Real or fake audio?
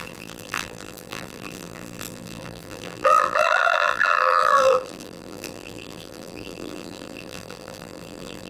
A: fake